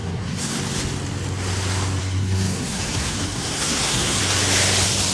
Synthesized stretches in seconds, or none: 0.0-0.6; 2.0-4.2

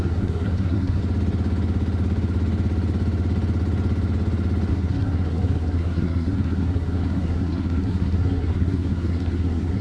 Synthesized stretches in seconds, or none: 0.0-1.0; 4.7-9.8

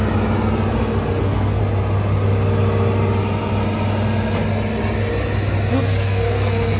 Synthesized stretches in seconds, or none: 1.2-1.6; 5.7-6.8

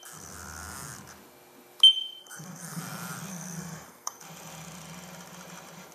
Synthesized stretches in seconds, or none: 2.2-2.8; 3.3-4.2

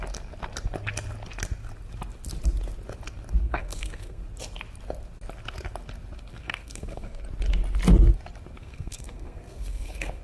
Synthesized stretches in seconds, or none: 3.4-4.2; 6.3-7.2; 8.6-10.2

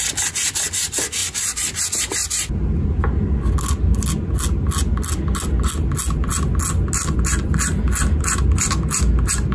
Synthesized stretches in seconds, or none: none